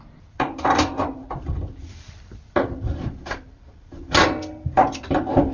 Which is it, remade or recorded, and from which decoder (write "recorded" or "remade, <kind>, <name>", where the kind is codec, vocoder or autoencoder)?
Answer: recorded